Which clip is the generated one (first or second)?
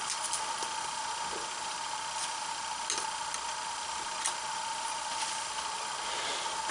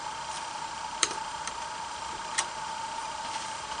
second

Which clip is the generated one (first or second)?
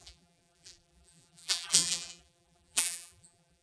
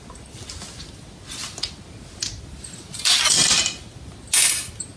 first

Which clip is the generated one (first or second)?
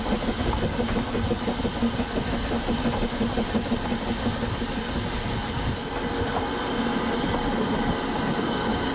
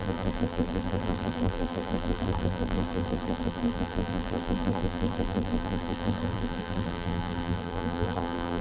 second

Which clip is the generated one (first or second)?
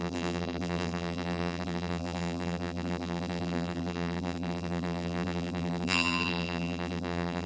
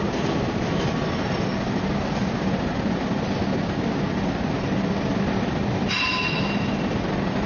first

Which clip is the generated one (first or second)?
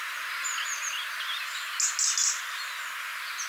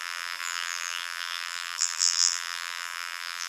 second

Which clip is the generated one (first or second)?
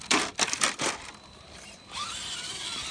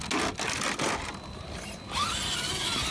first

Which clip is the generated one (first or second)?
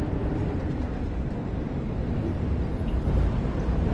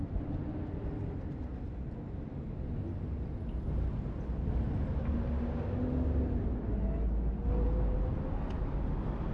first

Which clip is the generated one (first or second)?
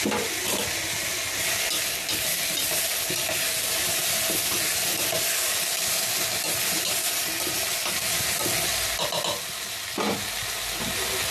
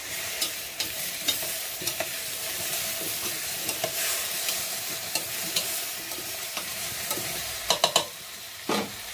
second